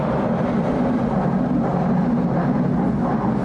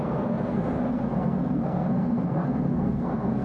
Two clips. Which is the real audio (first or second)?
first